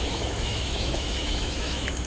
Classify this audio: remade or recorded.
remade